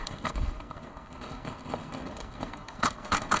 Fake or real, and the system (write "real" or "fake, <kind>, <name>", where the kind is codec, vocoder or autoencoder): fake, codec, SNAC